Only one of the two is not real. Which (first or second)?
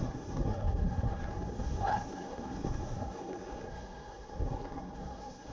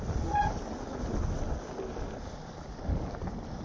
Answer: first